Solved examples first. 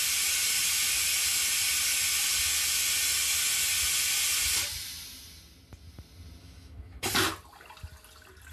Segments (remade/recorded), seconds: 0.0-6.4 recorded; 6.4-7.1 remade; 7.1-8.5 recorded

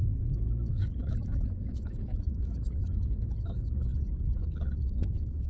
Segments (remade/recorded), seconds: 0.0-3.9 remade; 3.9-4.8 recorded; 4.8-5.5 remade